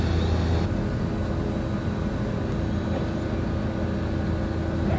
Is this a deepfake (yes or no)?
no